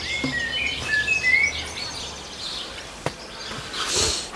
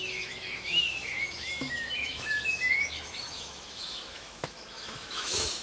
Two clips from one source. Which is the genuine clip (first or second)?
first